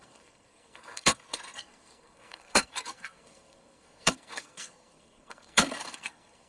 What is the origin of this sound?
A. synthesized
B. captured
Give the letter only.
A